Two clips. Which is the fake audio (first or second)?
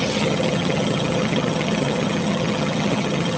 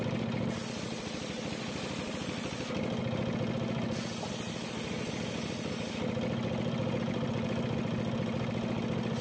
first